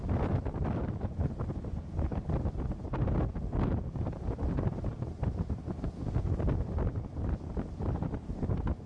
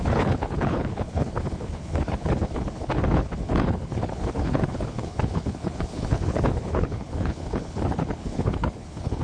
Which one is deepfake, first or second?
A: second